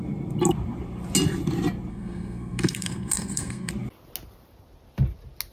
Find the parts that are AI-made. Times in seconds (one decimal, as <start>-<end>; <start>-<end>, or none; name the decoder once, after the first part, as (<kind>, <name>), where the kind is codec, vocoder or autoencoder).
1.9-3.7 (codec, SNAC)